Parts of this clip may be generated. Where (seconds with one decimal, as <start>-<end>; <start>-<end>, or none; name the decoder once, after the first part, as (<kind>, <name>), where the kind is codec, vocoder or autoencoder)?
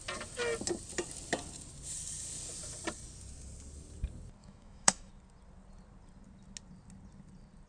4.4-5.1 (autoencoder, DAC-VAE)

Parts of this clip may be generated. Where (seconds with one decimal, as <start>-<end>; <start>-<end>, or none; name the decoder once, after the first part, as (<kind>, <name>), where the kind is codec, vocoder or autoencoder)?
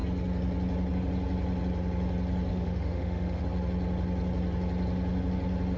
2.5-3.4 (autoencoder, DAC-VAE)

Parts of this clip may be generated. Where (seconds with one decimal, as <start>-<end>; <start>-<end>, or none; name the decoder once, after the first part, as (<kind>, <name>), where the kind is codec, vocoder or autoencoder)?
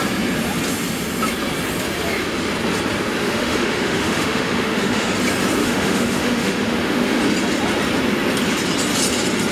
3.2-5.1 (autoencoder, DAC-VAE); 5.6-7.2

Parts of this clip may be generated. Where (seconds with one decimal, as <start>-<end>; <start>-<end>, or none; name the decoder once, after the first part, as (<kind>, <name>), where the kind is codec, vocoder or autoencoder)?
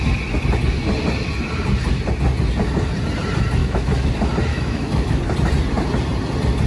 3.6-4.1 (autoencoder, DAC-VAE); 4.5-5.2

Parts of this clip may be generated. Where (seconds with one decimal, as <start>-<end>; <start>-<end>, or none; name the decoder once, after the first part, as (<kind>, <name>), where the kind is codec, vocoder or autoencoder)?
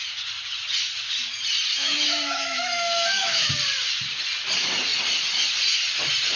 1.7-3.5 (autoencoder, DAC-VAE)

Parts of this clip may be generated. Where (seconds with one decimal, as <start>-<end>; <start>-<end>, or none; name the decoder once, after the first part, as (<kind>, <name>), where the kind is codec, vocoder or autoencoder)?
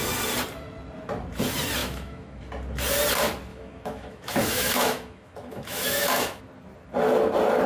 1.8-2.4 (autoencoder, DAC-VAE); 3.5-6.4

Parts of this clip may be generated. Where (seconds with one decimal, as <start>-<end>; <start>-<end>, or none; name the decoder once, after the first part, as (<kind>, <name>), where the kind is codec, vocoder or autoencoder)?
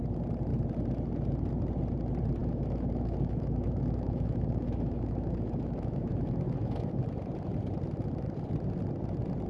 2.4-7.0 (autoencoder, DAC-VAE)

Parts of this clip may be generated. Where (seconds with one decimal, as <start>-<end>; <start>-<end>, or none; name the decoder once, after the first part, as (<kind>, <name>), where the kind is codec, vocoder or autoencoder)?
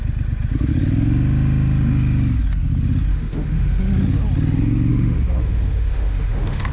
3.1-3.8 (autoencoder, DAC-VAE); 4.9-6.7